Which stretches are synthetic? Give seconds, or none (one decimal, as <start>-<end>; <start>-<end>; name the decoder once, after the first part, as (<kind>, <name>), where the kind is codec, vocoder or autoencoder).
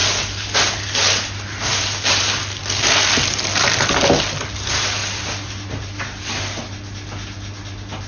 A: none